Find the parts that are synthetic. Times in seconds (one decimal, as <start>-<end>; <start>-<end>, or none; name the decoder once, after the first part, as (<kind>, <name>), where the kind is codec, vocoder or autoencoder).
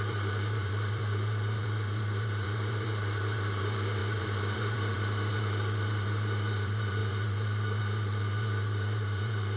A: 0.0-9.6 (vocoder, BigVGAN v2)